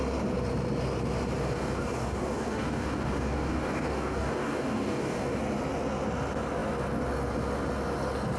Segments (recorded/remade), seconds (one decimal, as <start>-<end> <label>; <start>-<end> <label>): 0.0-1.4 recorded; 1.4-5.4 remade; 5.4-8.4 recorded